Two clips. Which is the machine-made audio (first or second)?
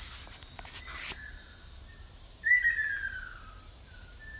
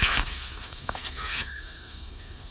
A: second